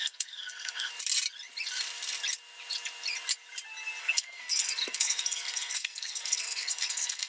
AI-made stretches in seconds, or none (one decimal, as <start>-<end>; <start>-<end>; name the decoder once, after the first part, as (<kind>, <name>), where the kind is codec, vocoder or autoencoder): 0.0-0.9 (codec, SNAC); 4.0-7.3